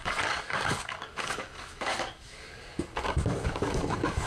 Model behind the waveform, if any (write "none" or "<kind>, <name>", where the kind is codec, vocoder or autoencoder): codec, DAC